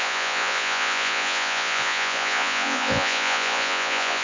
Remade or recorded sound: remade